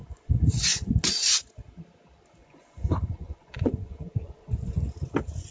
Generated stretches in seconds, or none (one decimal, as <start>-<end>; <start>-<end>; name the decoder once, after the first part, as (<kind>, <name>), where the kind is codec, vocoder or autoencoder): 0.0-0.9 (vocoder, Vocos); 2.4-4.9